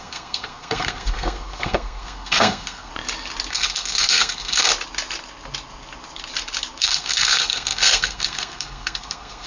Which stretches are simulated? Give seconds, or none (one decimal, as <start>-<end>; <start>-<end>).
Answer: 0.0-2.9; 3.5-4.7; 6.8-9.5